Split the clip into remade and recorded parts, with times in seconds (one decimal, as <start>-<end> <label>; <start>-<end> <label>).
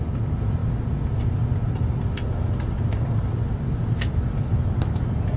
0.0-5.4 recorded